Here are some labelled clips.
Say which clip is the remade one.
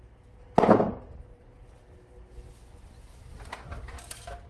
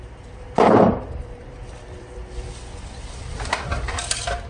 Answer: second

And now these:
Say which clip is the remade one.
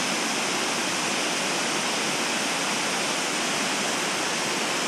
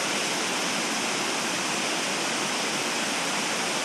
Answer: second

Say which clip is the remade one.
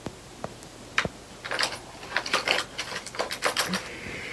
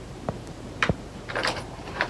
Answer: second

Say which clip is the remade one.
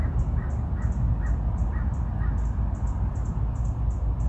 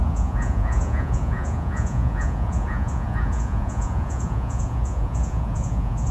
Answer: second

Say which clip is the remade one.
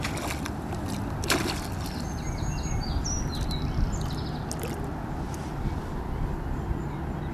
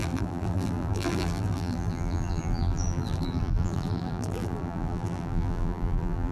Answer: second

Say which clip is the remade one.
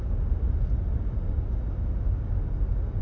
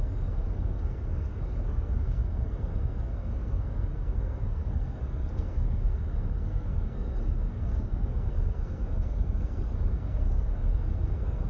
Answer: second